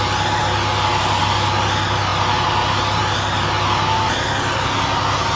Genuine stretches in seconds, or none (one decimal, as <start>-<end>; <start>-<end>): 0.0-5.4